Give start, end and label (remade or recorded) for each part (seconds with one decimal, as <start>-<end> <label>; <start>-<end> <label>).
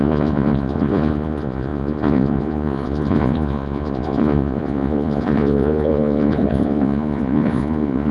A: 0.0-8.1 remade